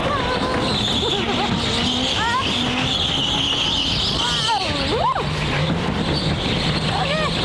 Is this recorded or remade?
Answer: recorded